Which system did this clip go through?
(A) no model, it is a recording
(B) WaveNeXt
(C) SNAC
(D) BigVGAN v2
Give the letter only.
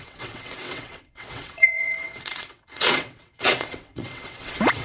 B